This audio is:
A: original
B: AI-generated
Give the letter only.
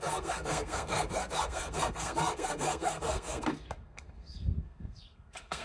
B